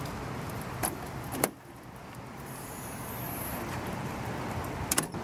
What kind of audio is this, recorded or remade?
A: recorded